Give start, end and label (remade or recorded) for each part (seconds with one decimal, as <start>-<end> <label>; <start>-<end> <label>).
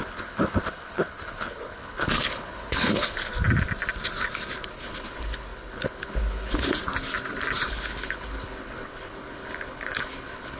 0.0-3.3 remade; 3.3-4.7 recorded; 4.7-6.8 remade; 6.8-7.7 recorded; 7.7-10.6 remade